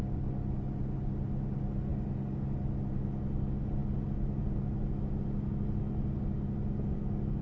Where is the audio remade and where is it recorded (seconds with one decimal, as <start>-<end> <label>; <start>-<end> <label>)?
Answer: 0.0-7.4 recorded